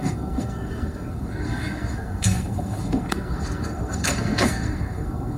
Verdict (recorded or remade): remade